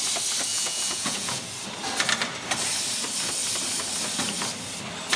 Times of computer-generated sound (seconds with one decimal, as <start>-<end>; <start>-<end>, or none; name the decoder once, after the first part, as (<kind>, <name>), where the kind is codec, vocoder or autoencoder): 0.5-1.4 (vocoder, Vocos)